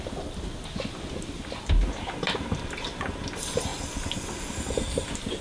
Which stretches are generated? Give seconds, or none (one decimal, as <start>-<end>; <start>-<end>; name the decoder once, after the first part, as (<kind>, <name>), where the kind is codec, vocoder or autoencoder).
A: none